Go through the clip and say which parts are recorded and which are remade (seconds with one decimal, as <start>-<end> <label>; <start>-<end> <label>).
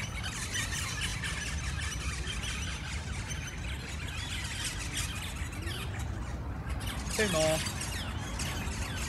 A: 0.0-9.1 recorded